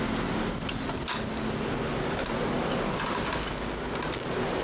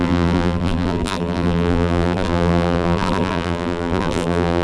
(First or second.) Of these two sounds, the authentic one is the first